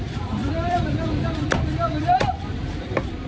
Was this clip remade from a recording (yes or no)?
yes